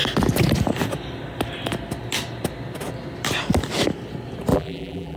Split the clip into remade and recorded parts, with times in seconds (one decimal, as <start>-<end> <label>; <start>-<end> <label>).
0.0-4.5 recorded; 4.5-5.2 remade